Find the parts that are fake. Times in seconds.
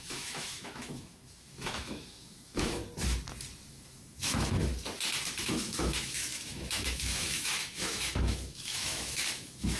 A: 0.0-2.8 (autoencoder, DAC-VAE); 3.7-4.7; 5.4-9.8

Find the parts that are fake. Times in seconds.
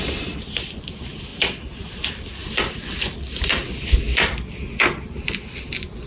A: none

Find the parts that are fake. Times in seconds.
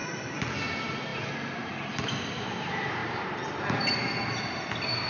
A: none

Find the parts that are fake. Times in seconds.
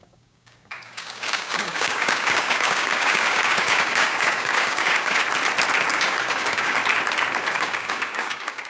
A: 0.0-5.2 (codec, DAC); 5.9-6.8; 7.5-8.7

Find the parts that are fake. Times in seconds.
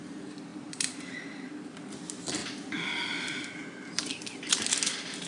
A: none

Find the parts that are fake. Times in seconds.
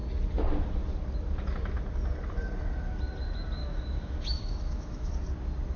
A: 3.6-5.1 (autoencoder, DAC-VAE)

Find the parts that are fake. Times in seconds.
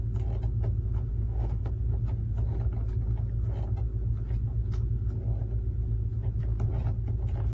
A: 1.1-1.7 (autoencoder, DAC-VAE)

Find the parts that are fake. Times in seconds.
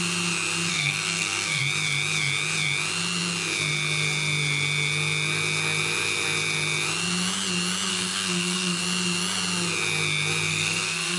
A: 0.7-1.6 (codec, SNAC); 7.9-8.8; 10.5-11.2